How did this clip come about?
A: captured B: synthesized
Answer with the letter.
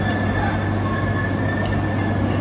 A